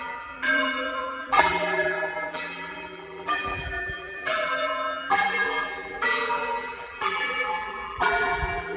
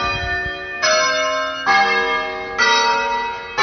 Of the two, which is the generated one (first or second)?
first